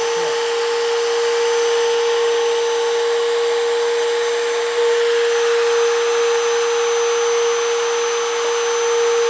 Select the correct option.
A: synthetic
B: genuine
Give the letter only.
B